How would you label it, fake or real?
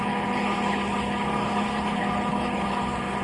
fake